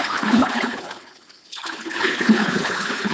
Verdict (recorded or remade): remade